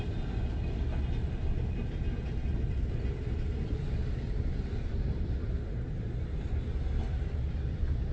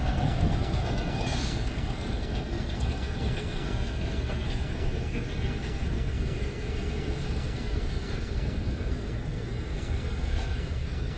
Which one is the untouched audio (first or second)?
first